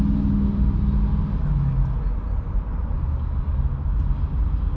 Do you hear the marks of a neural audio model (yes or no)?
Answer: no